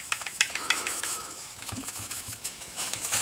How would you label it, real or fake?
fake